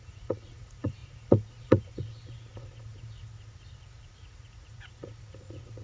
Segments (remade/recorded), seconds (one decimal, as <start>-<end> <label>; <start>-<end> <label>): 0.0-5.8 remade